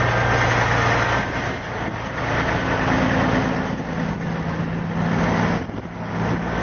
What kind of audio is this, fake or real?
real